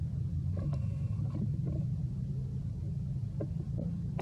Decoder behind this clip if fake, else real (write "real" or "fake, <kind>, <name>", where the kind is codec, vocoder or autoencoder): real